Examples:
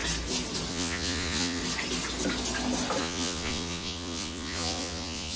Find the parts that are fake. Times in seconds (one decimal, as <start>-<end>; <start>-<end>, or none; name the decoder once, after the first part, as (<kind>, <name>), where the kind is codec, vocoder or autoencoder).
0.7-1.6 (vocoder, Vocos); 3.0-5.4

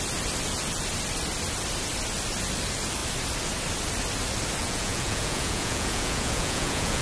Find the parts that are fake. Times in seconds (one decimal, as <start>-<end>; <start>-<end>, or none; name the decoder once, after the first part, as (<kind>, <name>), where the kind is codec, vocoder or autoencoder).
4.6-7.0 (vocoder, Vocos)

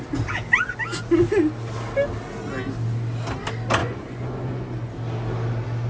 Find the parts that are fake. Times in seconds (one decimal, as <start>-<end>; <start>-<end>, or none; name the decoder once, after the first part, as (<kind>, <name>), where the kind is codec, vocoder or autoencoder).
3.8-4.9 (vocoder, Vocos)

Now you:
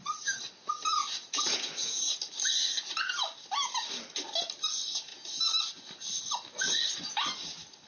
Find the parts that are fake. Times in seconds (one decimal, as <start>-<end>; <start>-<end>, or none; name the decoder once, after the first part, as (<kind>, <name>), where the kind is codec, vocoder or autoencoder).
1.0-2.1 (vocoder, Vocos)